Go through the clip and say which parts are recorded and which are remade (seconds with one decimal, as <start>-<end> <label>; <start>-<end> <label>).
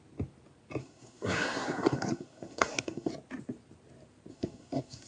0.0-0.8 recorded; 0.8-3.1 remade; 3.1-4.3 recorded; 4.3-5.1 remade